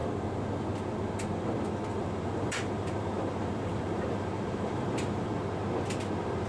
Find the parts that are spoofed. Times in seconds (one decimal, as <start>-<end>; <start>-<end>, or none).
1.9-5.3